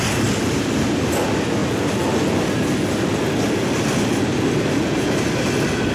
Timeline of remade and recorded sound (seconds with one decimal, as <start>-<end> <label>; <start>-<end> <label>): 0.0-5.9 recorded